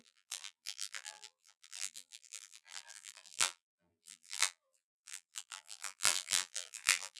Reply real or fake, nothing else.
fake